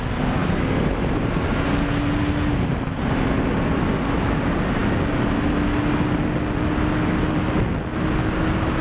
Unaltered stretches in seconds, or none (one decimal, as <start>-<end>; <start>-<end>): 0.0-8.8